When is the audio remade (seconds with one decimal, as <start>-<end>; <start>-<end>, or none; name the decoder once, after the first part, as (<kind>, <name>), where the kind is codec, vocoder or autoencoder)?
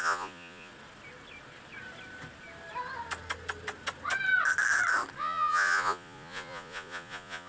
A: 0.0-0.7 (vocoder, Vocos); 5.2-7.5